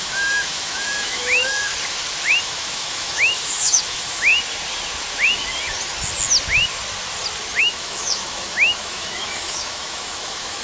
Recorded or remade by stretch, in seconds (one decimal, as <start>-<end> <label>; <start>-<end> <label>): 0.0-1.7 remade; 1.7-2.4 recorded; 2.4-4.3 remade; 4.3-7.6 recorded; 7.6-10.6 remade